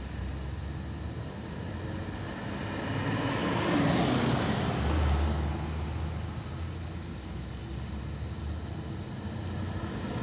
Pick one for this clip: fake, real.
real